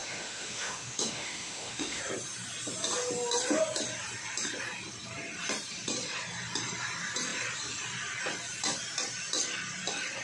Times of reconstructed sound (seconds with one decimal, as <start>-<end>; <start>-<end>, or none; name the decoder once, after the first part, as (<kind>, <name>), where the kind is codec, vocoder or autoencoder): 0.0-2.0 (autoencoder, DAC-VAE)